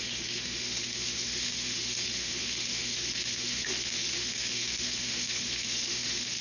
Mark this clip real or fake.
fake